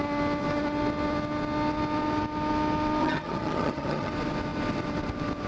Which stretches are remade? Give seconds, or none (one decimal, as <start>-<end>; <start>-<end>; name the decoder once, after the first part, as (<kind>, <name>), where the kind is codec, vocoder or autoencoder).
3.0-4.1 (vocoder, HiFi-GAN)